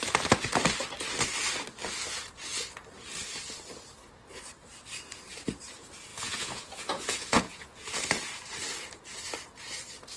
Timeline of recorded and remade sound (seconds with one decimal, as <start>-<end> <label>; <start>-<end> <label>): 0.0-6.1 recorded; 6.1-7.8 remade; 7.8-10.2 recorded